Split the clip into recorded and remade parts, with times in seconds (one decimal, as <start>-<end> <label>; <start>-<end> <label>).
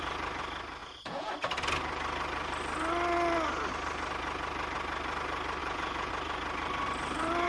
0.0-0.8 recorded; 0.8-1.3 remade; 1.3-5.6 recorded; 5.6-6.1 remade; 6.1-7.5 recorded